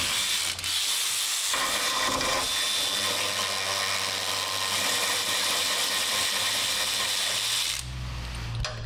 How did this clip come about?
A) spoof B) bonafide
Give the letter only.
B